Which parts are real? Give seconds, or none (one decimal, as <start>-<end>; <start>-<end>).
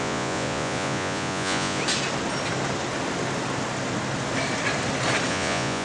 1.8-5.3